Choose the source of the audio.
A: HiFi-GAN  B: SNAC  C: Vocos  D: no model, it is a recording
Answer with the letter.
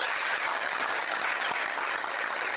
A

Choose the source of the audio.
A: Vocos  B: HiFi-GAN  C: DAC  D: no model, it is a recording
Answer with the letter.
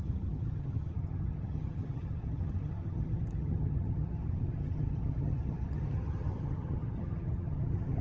B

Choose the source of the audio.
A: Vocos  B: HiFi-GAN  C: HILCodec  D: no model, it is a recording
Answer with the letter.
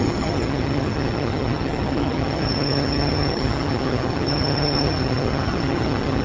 B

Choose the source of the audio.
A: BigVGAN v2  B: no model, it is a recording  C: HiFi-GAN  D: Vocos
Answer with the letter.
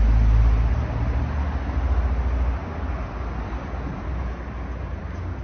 B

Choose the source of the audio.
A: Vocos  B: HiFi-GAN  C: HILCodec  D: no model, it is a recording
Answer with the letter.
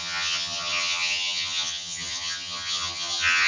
B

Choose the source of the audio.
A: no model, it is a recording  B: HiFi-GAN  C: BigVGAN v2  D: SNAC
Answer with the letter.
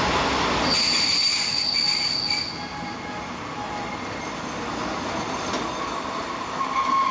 A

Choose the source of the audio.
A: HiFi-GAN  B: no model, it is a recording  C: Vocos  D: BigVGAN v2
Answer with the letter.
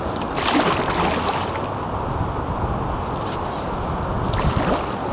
B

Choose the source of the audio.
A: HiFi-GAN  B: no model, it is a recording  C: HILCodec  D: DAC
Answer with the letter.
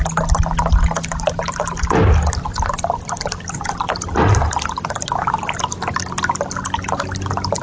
B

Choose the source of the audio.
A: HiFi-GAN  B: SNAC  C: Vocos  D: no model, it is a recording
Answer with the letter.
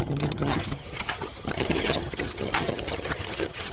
A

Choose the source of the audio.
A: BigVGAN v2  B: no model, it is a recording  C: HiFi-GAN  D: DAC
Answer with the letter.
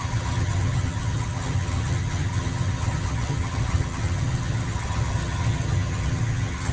C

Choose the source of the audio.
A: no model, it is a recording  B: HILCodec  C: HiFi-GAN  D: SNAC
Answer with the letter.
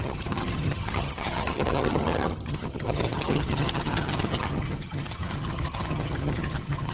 C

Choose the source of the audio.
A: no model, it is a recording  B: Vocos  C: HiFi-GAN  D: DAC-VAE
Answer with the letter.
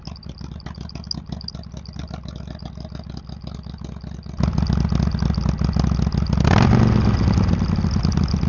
A